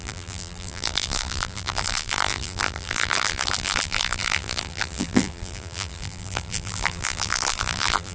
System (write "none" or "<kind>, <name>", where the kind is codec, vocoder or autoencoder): vocoder, BigVGAN v2